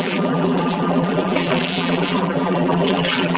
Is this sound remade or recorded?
remade